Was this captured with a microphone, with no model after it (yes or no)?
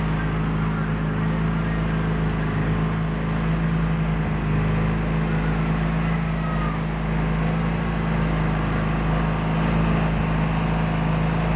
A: yes